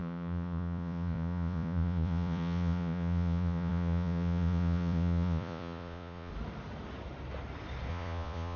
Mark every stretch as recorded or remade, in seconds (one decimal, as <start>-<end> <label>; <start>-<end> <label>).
0.0-6.3 remade; 6.3-7.9 recorded; 7.9-8.6 remade